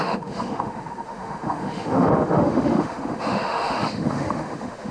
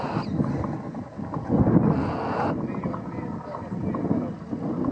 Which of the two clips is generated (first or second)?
first